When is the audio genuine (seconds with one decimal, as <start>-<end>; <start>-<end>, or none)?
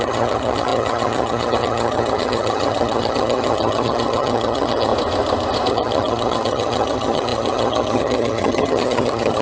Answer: 4.9-5.7